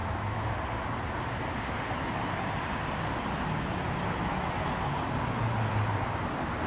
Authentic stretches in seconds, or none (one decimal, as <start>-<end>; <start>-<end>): 0.5-6.7